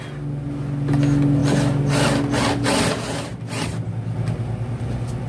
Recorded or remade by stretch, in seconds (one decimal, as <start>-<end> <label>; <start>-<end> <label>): 0.0-5.3 recorded